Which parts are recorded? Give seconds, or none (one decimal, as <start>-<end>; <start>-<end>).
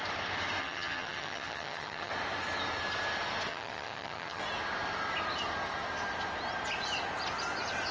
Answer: 0.0-0.6; 2.1-3.5; 4.4-7.9